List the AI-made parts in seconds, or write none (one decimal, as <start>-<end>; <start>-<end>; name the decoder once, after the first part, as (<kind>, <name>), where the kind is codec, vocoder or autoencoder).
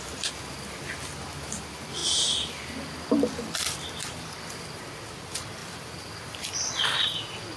2.0-4.8 (vocoder, BigVGAN v2); 5.6-6.7